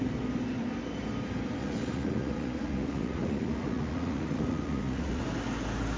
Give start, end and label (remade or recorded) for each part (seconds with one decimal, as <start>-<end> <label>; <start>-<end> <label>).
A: 0.0-1.6 recorded; 1.6-5.2 remade; 5.2-6.0 recorded